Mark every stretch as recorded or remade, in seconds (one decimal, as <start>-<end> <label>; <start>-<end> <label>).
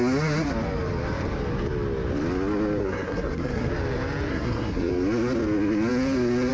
0.0-2.8 recorded; 2.8-3.7 remade; 3.7-4.3 recorded; 4.3-4.9 remade; 4.9-6.5 recorded